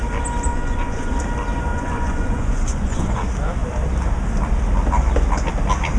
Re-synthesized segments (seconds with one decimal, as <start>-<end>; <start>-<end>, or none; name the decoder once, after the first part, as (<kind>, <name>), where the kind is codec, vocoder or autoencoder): 0.5-1.1 (vocoder, Vocos); 1.7-3.1